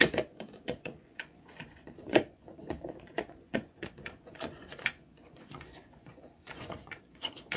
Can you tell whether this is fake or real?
fake